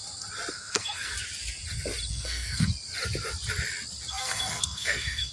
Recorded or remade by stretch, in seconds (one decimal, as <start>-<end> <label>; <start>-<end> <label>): 0.0-0.5 recorded; 0.5-1.1 remade; 1.1-2.1 recorded; 2.1-2.7 remade; 2.7-4.1 recorded; 4.1-5.3 remade